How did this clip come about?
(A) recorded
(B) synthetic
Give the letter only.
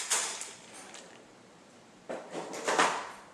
B